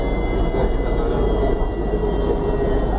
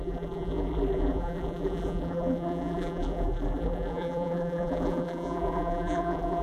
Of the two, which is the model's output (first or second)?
second